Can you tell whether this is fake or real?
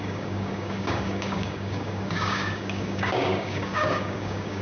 fake